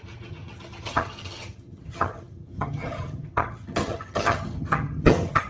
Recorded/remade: remade